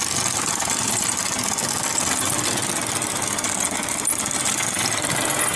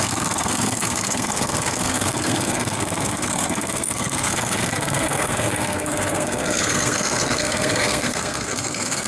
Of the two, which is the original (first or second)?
first